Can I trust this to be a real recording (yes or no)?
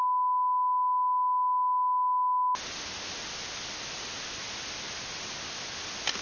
yes